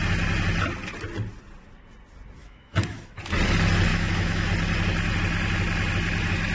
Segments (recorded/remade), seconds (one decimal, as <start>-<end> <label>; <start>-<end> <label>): 0.0-2.4 recorded; 2.4-3.2 remade; 3.2-3.9 recorded; 3.9-4.5 remade; 4.5-6.5 recorded